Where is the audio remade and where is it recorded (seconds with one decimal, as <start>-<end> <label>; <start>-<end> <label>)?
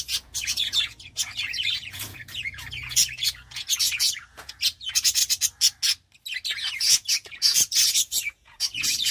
0.0-5.2 remade; 5.2-6.5 recorded; 6.5-9.1 remade